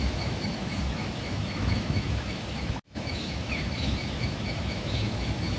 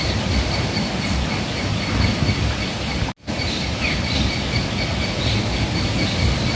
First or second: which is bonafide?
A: second